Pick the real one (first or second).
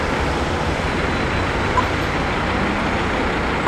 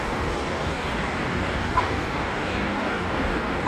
first